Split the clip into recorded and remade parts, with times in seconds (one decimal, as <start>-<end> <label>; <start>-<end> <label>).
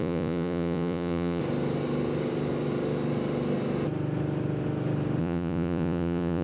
0.0-1.4 remade; 1.4-5.2 recorded; 5.2-6.4 remade